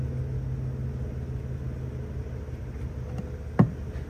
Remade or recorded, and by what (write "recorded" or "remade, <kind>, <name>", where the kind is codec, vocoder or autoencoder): recorded